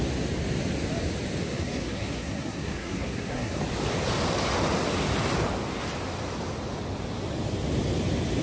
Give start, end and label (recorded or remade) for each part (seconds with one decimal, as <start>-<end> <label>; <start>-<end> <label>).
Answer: 0.0-1.4 recorded; 1.4-3.6 remade; 3.6-8.4 recorded